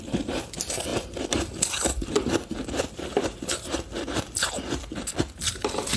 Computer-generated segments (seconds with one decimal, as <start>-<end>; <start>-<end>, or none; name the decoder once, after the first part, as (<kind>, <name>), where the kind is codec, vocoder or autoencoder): none